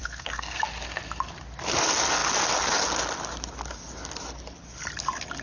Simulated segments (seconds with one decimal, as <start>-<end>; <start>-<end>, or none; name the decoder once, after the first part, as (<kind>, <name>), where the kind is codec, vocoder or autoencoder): 0.0-0.6 (codec, SNAC)